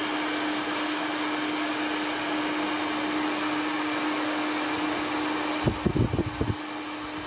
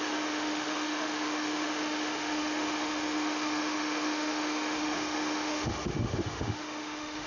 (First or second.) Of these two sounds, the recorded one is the first